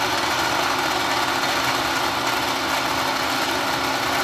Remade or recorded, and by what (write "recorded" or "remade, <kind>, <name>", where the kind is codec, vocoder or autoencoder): recorded